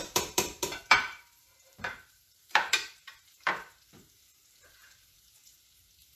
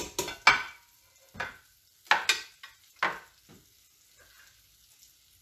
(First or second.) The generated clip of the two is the first